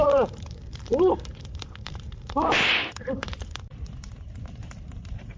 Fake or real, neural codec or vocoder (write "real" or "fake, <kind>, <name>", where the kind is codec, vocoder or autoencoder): fake, vocoder, BigVGAN v2